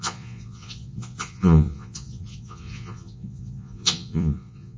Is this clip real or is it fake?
fake